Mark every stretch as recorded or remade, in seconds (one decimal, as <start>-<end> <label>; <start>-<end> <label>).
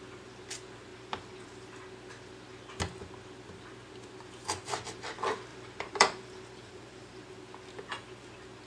0.0-0.9 recorded; 0.9-1.7 remade; 1.7-5.5 recorded; 5.5-7.3 remade; 7.3-8.7 recorded